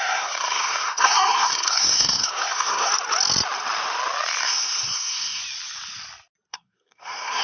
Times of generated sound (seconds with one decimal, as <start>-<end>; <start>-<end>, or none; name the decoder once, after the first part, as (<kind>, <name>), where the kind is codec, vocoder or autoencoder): 0.0-2.9 (codec, SNAC); 4.4-5.4; 6.5-7.4

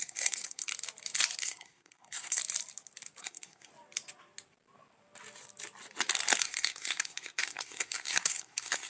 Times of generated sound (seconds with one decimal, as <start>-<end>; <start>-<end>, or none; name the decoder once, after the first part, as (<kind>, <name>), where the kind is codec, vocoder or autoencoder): 0.0-0.7 (codec, SNAC); 1.4-2.4; 3.2-3.7; 6.4-8.9

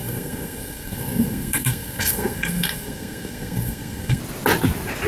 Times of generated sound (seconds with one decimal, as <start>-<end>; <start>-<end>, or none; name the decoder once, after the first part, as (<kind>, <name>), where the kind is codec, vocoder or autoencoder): 0.0-4.2 (codec, SNAC)

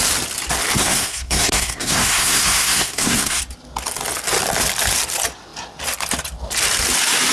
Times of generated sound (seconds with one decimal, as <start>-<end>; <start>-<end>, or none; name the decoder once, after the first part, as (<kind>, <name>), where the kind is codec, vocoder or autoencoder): 0.8-3.4 (codec, SNAC)

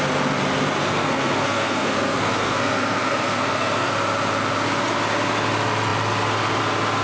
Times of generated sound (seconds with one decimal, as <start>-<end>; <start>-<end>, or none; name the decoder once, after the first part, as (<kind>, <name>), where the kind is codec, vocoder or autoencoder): 0.8-3.9 (codec, SNAC)

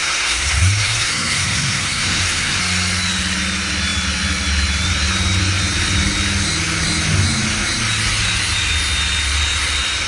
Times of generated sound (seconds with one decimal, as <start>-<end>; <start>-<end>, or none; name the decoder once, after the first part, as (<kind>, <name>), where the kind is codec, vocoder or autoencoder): 0.0-2.6 (codec, SNAC)